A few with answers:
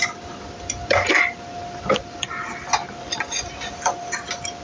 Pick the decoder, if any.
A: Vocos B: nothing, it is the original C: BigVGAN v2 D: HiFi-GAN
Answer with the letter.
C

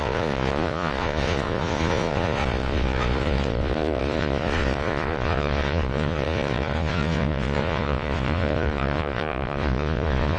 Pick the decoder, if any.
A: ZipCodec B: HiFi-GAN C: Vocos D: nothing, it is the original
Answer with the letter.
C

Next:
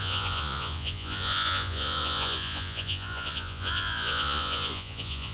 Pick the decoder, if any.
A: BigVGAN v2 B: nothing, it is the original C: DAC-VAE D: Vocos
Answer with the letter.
D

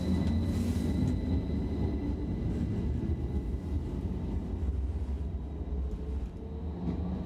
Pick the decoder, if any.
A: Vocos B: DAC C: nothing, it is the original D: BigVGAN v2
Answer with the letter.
C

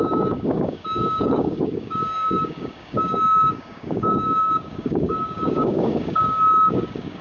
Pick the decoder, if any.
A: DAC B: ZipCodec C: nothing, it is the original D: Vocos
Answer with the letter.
A